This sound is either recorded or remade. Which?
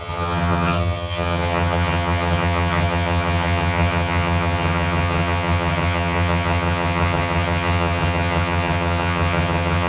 remade